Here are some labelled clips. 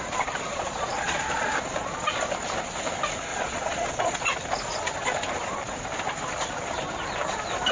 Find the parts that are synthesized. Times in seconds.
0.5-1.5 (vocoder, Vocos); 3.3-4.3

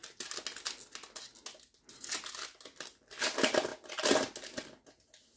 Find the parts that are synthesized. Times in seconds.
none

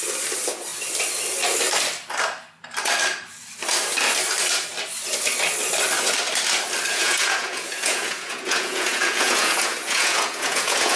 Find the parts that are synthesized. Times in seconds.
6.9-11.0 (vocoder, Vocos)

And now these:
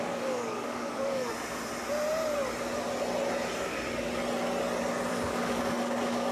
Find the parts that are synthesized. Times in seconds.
0.0-1.3 (codec, DAC); 5.1-6.3